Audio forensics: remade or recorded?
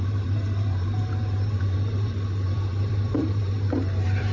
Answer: remade